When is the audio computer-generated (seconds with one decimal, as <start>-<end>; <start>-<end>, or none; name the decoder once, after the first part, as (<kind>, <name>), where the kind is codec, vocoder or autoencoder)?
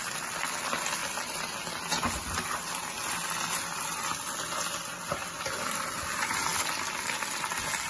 none